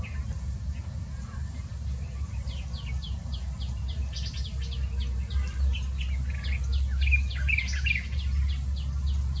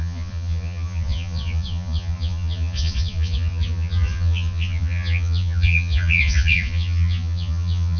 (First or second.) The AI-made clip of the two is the second